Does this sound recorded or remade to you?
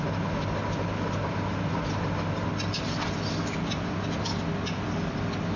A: recorded